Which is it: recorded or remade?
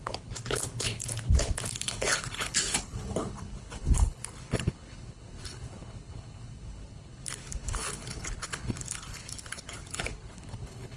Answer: remade